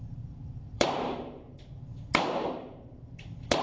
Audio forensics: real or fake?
fake